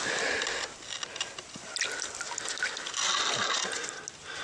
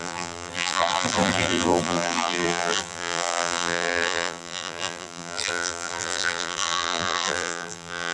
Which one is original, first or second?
first